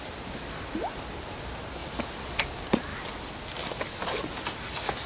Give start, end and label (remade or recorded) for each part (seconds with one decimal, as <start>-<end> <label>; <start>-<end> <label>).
0.0-5.1 recorded